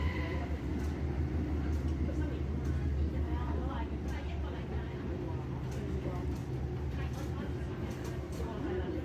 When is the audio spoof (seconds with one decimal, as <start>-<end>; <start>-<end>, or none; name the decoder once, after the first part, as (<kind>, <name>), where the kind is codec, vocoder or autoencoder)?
none